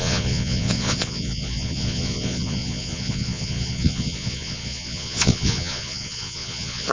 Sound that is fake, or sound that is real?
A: fake